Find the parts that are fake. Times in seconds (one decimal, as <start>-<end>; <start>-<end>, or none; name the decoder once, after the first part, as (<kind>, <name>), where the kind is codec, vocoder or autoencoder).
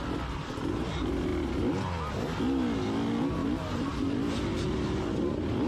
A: none